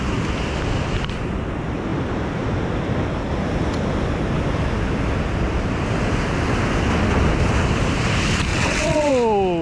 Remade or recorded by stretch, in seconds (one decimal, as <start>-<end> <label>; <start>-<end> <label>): 0.0-8.5 recorded; 8.5-9.1 remade; 9.1-9.6 recorded